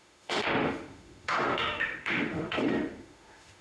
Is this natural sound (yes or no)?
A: no